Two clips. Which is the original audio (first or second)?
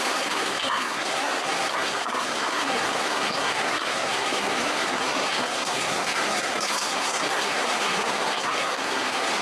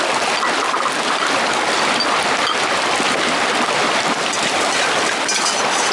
second